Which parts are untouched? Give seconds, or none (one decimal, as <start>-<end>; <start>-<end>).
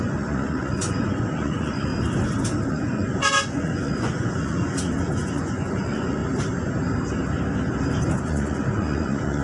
1.9-2.7; 6.2-8.1